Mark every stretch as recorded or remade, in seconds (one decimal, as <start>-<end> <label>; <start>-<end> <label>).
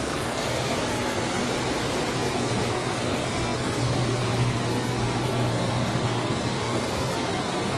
0.0-1.4 remade; 1.4-2.1 recorded; 2.1-7.8 remade